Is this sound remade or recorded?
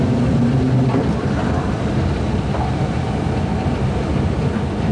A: recorded